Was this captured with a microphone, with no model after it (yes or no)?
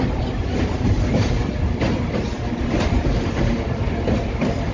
no